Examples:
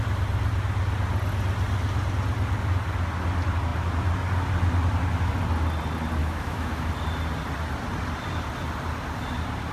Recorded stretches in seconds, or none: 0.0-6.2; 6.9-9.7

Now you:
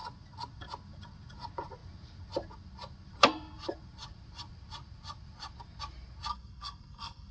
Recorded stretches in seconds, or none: 0.0-6.3

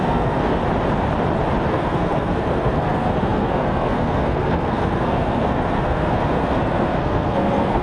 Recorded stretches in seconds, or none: 0.6-1.7

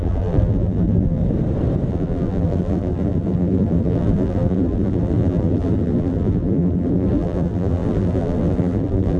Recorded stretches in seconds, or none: 1.2-1.9

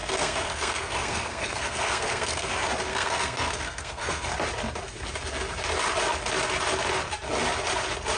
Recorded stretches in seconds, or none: 2.5-2.9; 4.3-8.2

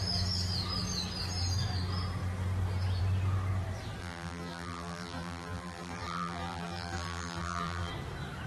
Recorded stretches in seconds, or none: 0.0-4.0; 7.9-8.5

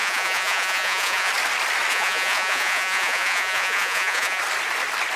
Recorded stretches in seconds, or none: 1.3-1.9; 4.4-5.2

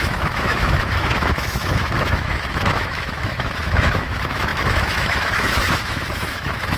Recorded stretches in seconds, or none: none